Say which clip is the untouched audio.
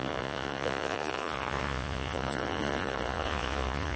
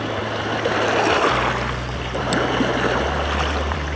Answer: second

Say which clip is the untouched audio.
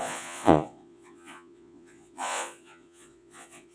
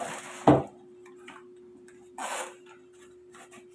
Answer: second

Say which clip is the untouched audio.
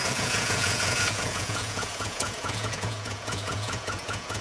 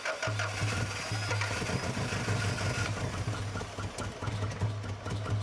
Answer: second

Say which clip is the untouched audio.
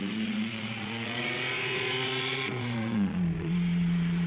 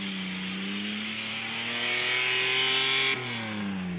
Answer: second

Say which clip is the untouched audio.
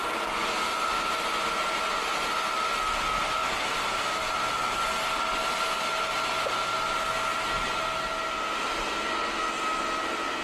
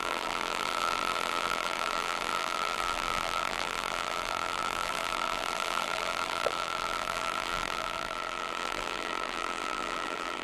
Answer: first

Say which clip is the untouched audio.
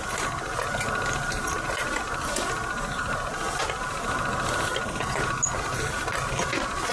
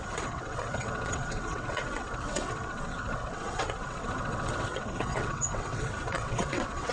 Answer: first